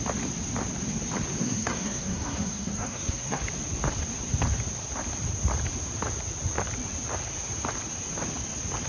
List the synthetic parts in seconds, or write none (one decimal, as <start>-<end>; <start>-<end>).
1.4-3.4

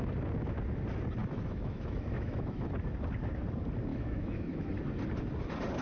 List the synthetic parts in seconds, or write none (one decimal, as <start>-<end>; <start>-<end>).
1.2-2.7; 3.9-4.7

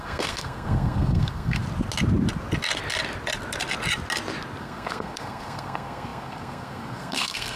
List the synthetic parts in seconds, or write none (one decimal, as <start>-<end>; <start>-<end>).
0.0-1.6; 4.6-7.6

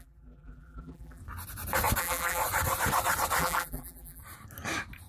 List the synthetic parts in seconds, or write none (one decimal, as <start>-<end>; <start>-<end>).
0.0-1.2; 2.0-2.4; 3.4-4.2

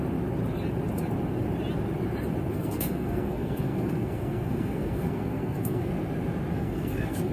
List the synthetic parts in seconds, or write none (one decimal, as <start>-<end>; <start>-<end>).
2.5-5.9; 6.5-7.3

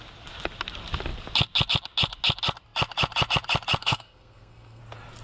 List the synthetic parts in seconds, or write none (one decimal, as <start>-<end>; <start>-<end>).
3.8-4.8

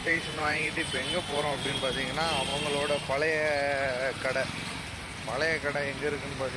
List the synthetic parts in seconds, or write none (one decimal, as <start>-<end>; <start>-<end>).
0.0-1.8